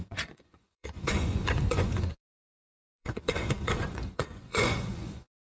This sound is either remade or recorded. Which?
remade